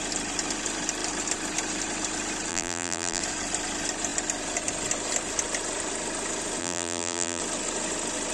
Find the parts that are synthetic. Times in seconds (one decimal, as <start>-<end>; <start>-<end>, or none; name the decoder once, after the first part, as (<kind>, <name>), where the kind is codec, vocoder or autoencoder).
2.5-3.2 (vocoder, BigVGAN v2); 6.6-7.4